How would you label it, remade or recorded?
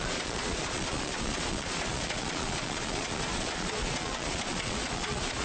remade